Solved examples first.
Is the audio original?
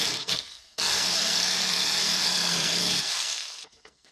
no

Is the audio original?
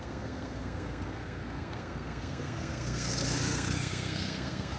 no